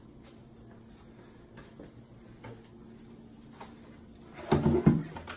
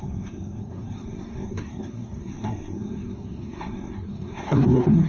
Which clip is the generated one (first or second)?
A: second